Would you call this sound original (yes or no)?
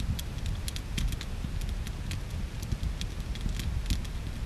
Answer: yes